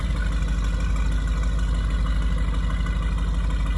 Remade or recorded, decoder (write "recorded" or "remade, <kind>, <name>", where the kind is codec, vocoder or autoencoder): recorded